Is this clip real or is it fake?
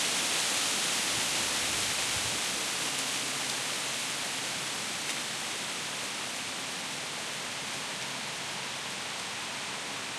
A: real